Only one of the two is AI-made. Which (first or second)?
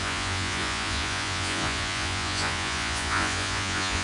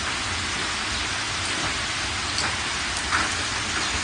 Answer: first